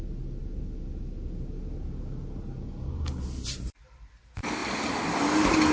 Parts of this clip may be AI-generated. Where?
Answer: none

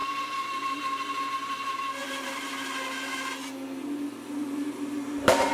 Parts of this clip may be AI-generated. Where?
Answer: 0.0-0.8 (vocoder, BigVGAN v2); 2.0-2.5; 4.4-5.5

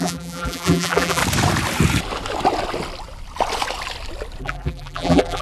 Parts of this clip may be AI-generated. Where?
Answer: 0.0-1.2 (vocoder, BigVGAN v2); 4.4-5.4

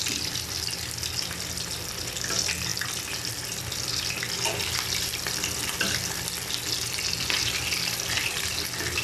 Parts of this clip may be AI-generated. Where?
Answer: none

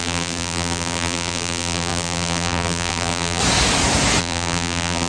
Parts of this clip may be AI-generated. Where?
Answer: 0.0-3.4 (vocoder, BigVGAN v2); 4.2-5.1